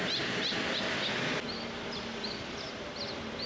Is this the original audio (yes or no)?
yes